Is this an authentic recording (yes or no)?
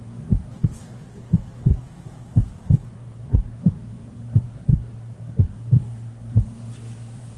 no